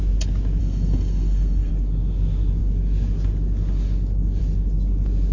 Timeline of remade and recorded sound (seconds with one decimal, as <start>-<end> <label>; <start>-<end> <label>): 0.0-0.6 recorded; 0.6-1.7 remade; 1.7-5.3 recorded